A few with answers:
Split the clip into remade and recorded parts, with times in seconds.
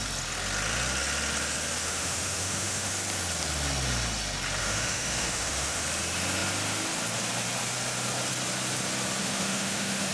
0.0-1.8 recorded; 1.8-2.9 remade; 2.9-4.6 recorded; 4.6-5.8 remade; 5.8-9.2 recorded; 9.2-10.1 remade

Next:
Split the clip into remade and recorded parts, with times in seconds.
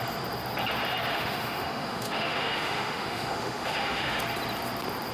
0.0-1.1 recorded; 1.1-4.2 remade; 4.2-5.1 recorded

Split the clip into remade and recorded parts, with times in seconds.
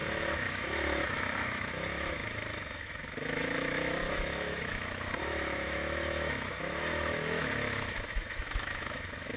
0.0-9.4 remade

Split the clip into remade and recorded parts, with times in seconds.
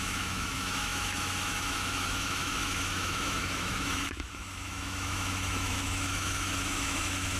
0.0-7.4 remade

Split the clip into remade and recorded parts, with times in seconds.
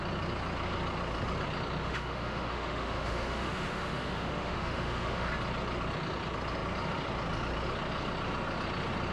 0.0-1.8 recorded; 1.8-5.3 remade; 5.3-9.1 recorded